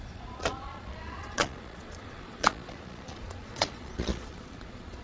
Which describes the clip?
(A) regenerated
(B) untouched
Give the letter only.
A